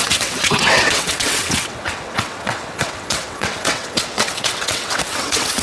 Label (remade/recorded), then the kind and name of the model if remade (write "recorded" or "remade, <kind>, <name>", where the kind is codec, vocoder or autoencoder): remade, vocoder, WaveNeXt